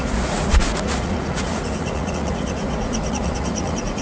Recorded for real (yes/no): no